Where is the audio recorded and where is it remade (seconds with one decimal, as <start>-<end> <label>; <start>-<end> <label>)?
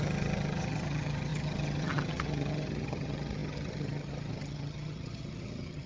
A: 0.0-5.9 remade